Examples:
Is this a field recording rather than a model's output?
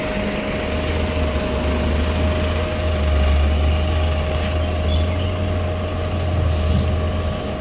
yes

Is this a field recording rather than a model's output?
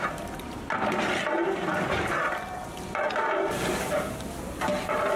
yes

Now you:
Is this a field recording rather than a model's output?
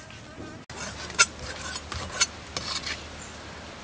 yes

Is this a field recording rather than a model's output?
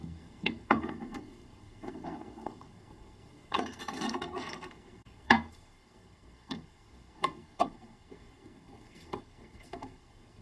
no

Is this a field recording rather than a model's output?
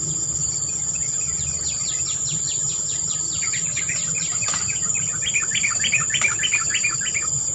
yes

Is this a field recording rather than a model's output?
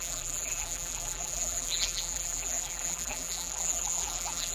no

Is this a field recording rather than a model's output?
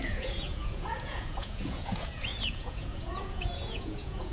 no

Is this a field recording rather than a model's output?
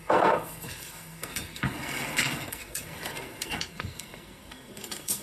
no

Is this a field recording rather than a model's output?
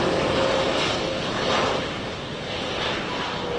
yes